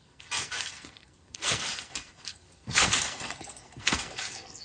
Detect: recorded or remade remade